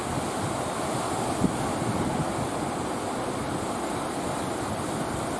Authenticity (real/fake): real